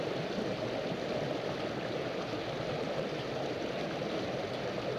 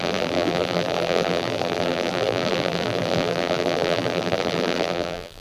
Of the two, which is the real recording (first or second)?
first